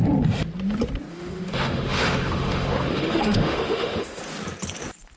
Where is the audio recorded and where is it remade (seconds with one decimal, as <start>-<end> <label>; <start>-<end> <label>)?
0.0-1.1 recorded; 1.1-4.2 remade; 4.2-5.2 recorded